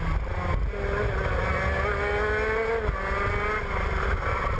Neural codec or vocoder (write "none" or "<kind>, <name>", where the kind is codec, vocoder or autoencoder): none